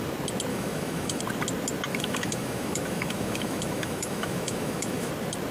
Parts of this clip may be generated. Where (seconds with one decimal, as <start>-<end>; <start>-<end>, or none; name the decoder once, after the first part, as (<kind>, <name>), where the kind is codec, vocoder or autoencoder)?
0.5-1.2 (autoencoder, DAC-VAE); 1.9-5.1

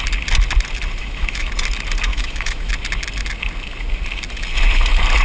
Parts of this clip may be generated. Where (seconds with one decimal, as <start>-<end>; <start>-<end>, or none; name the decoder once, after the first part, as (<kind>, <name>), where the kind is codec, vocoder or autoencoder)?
1.0-1.5 (autoencoder, DAC-VAE); 2.1-2.7